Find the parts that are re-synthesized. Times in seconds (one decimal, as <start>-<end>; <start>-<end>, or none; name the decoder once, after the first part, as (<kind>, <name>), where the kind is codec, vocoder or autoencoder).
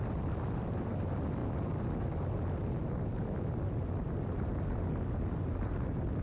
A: none